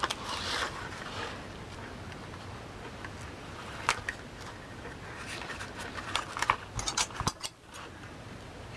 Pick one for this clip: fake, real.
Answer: real